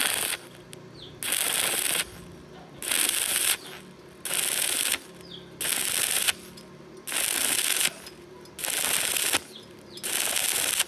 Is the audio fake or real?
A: real